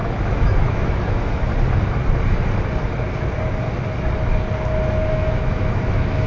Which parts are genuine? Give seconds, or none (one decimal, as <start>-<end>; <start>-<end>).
1.5-5.1